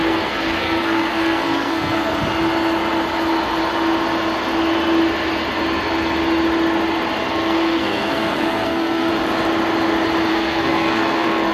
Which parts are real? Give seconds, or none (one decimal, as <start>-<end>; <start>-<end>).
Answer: 2.1-7.3; 9.1-10.3